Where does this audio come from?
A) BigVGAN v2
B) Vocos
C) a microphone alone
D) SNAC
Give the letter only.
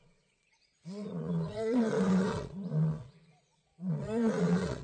B